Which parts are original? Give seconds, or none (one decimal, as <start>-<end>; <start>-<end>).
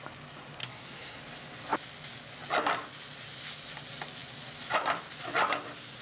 0.0-0.6; 1.2-6.0